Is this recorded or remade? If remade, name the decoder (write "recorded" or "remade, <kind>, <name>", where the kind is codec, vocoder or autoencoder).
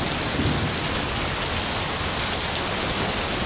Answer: recorded